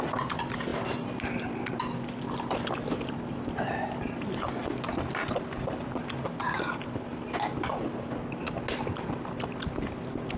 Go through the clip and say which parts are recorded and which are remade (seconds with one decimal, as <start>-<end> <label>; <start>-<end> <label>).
0.0-10.4 recorded